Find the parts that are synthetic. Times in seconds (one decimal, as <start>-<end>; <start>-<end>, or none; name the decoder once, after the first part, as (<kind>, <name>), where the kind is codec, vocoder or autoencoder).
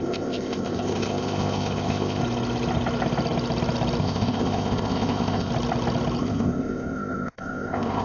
0.0-2.2 (codec, ZipCodec); 4.0-5.5; 6.2-8.0